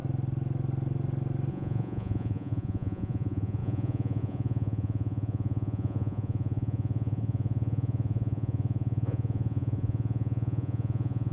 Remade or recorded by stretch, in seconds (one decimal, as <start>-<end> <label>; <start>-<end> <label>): 0.0-1.5 recorded; 1.5-11.3 remade